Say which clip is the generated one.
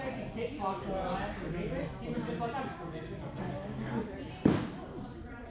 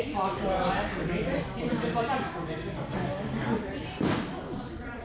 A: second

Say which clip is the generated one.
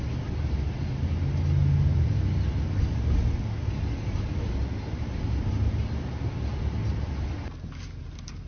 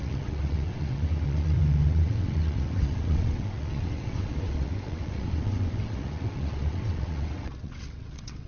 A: second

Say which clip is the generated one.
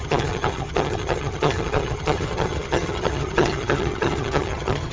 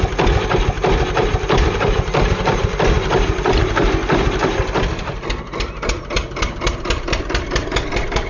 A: first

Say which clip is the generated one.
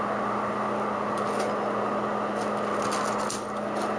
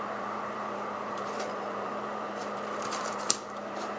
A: second